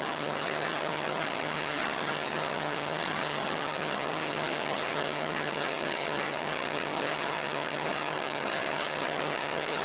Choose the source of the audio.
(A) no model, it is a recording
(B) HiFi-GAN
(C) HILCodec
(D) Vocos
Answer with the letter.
B